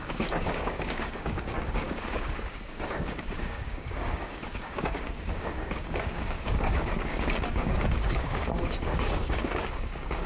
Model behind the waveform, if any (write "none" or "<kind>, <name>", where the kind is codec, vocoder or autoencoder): codec, DAC